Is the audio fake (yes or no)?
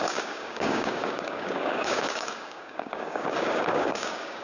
yes